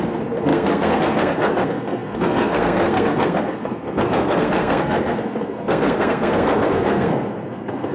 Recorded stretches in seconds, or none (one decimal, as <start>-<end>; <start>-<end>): none